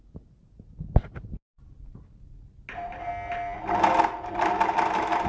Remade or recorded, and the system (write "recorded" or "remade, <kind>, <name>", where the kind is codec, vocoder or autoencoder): recorded